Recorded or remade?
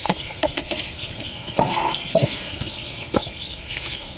remade